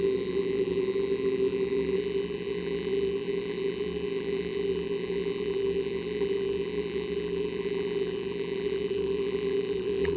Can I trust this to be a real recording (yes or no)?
no